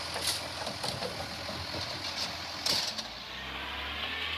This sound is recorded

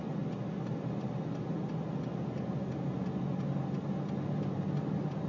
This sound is recorded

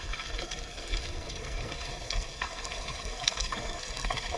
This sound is remade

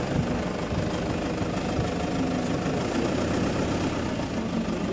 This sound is recorded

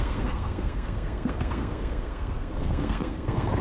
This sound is remade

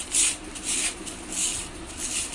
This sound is recorded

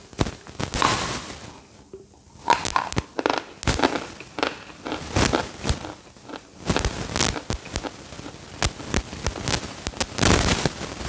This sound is recorded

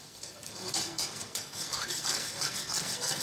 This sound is remade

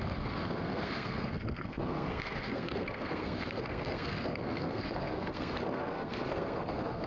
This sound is remade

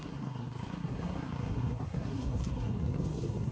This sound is remade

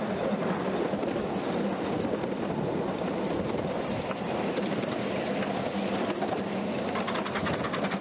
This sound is recorded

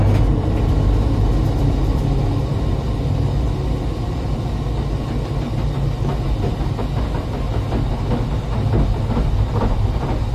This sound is recorded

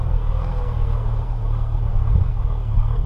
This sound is remade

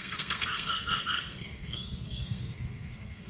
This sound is remade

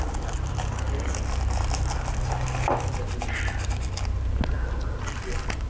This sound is recorded